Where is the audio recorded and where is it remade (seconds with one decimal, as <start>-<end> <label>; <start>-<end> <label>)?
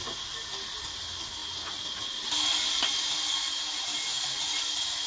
0.0-5.1 recorded